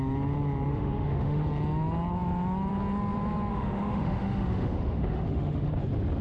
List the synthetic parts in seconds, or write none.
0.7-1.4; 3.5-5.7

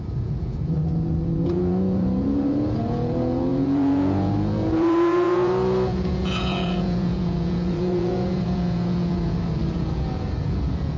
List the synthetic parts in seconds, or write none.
0.0-11.0

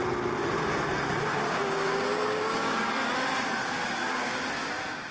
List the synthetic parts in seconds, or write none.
1.3-2.9; 3.6-4.5

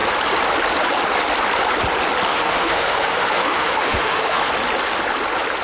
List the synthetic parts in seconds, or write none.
2.3-4.5

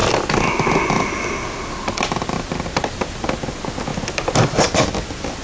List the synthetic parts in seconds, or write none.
none

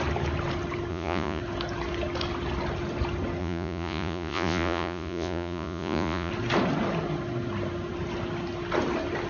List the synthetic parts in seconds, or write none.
0.9-1.4; 3.4-6.3

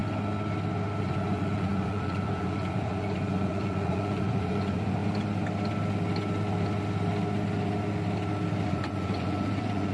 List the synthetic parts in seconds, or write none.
1.0-5.0; 8.7-9.9

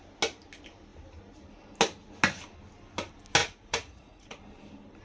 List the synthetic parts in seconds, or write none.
3.4-4.4